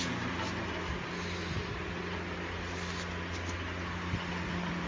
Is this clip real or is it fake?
real